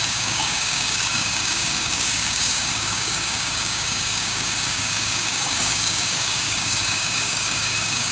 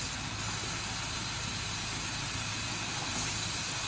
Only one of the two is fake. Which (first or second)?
first